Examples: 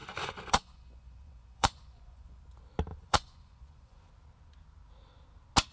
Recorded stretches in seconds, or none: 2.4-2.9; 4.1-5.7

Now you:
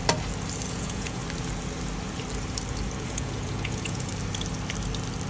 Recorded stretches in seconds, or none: 0.0-0.7; 1.2-3.0; 4.1-5.3

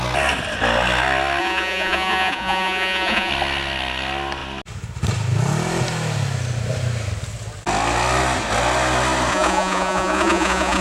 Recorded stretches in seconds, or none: 0.0-1.4; 3.3-9.3